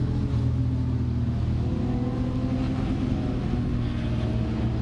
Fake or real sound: real